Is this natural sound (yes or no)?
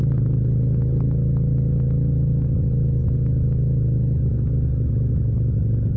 yes